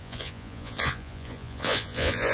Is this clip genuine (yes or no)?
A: no